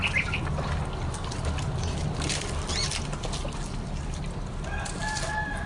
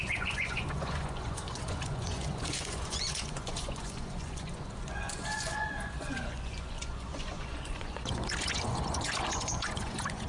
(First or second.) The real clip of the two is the first